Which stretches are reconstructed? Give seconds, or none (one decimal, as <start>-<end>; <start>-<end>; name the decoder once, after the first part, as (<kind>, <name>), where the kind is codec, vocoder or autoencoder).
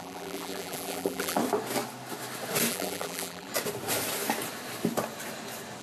0.0-1.4 (vocoder, BigVGAN v2); 2.7-3.5